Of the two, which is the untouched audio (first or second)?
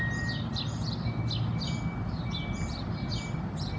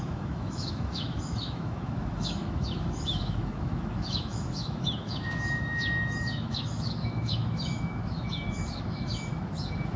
first